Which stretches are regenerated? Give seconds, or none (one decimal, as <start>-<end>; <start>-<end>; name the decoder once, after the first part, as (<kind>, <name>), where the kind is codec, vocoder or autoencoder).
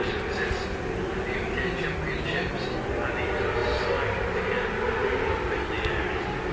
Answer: none